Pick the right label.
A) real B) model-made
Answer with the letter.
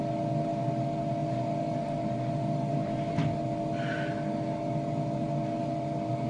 A